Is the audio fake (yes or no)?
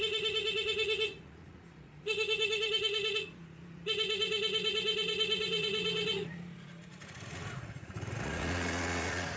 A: yes